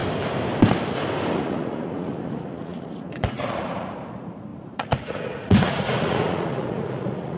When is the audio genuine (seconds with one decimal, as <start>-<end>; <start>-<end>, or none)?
0.0-1.3